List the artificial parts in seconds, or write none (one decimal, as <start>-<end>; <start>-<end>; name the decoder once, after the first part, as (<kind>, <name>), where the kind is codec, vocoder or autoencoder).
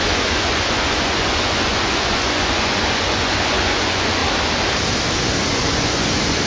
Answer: 0.0-4.2 (vocoder, Vocos); 5.5-6.5